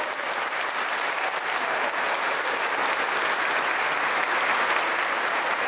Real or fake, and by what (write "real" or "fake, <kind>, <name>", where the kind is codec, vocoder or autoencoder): real